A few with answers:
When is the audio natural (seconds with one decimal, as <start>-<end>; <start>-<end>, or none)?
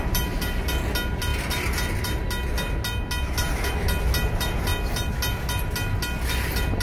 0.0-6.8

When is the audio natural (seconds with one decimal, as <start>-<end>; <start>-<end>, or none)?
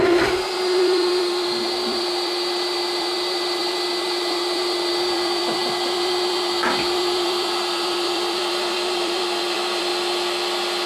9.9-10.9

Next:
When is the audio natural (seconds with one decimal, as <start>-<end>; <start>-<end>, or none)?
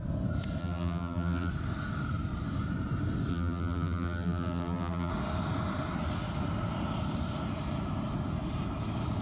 0.0-0.6; 1.5-3.3; 5.1-9.2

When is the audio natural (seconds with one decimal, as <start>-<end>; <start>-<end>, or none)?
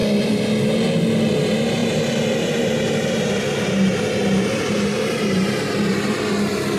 0.0-1.3